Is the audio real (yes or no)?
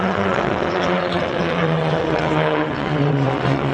no